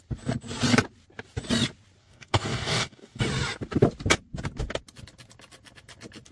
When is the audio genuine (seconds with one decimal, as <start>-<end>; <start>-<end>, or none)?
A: 0.0-2.0; 3.2-6.3